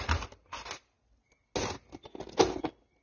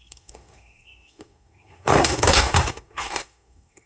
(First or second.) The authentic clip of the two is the first